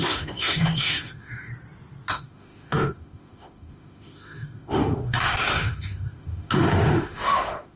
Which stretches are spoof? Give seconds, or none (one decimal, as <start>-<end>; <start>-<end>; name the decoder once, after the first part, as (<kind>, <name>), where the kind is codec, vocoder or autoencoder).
0.0-1.5 (autoencoder, DAC-VAE); 2.1-7.8